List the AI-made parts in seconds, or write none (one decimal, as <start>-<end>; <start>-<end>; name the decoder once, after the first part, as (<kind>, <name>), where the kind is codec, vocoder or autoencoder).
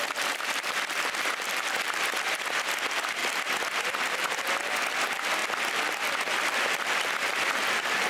none